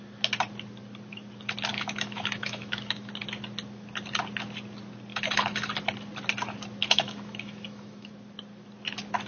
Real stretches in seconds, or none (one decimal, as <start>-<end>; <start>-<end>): 0.0-1.7; 3.1-5.1; 5.7-6.8; 8.1-9.3